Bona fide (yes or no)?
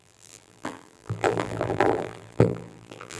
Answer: no